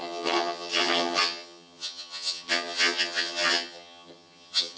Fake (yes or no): yes